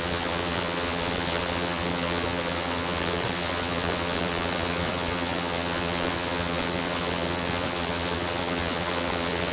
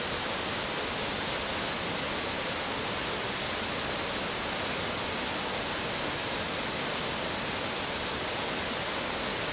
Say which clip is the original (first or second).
second